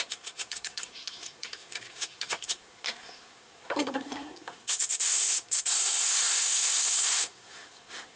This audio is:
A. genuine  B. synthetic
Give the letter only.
B